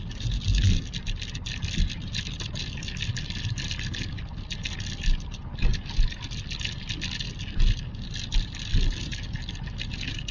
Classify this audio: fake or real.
real